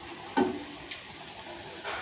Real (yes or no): yes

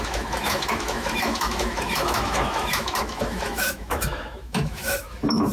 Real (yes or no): no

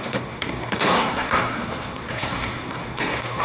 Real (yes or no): no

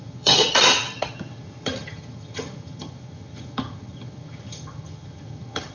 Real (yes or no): no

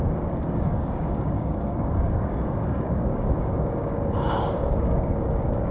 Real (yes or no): no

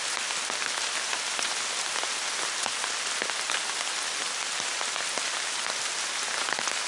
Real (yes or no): yes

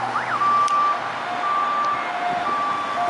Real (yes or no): yes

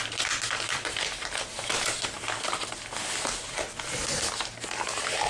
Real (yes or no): yes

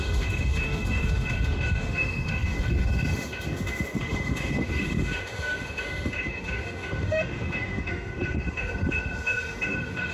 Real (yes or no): no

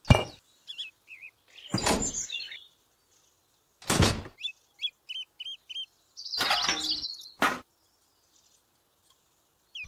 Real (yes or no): yes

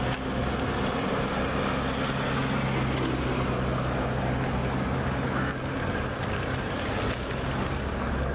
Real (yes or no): yes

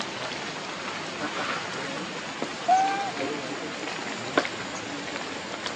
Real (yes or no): yes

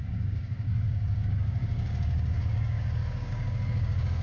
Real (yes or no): no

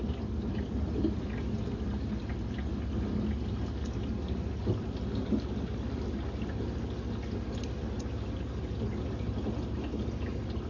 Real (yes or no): yes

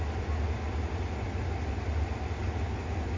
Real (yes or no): yes